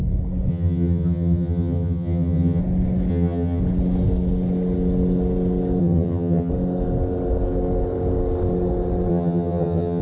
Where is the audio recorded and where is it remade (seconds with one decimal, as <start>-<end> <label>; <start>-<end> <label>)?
0.0-0.5 recorded; 0.5-2.6 remade; 2.6-3.1 recorded; 3.1-3.6 remade; 3.6-5.8 recorded; 5.8-6.5 remade; 6.5-9.1 recorded; 9.1-10.0 remade